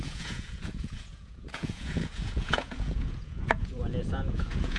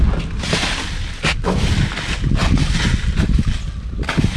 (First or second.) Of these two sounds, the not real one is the first